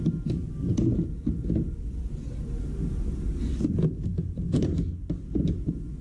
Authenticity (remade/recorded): recorded